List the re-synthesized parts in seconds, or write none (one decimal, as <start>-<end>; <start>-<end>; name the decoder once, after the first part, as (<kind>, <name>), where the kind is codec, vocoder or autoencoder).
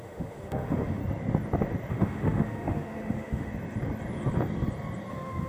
0.0-1.0 (autoencoder, DAC-VAE); 1.9-3.5; 5.1-5.5